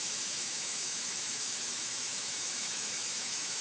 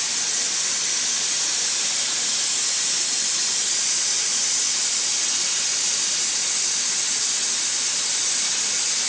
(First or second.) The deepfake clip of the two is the first